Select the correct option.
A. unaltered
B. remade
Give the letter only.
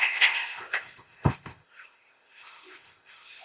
B